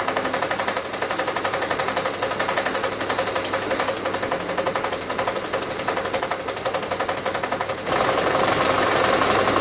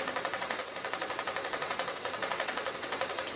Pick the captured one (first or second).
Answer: first